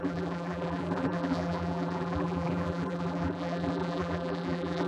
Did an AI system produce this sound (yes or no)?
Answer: yes